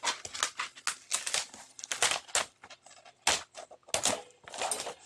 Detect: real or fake real